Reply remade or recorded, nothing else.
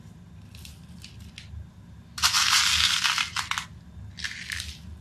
recorded